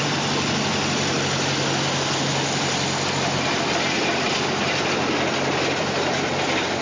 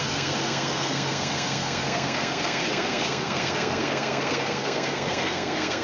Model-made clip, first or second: second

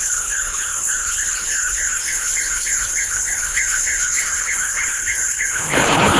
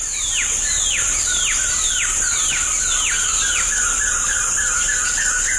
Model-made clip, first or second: first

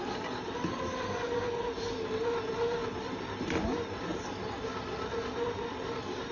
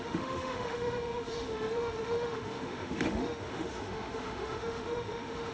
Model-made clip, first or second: second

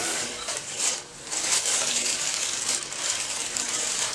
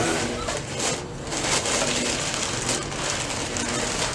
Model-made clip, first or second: first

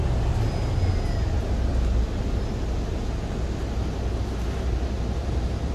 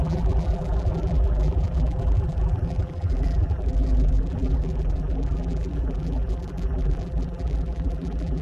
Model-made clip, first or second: second